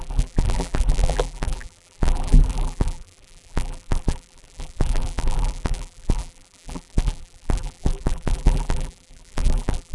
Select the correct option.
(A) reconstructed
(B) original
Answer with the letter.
A